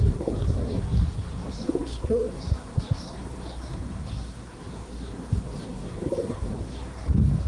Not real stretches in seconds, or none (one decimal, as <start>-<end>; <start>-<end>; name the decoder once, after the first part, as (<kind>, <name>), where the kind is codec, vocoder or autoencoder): 0.0-7.5 (codec, SNAC)